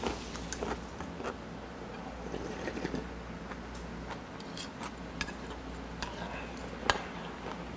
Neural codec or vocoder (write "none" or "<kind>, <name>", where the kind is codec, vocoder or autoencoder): none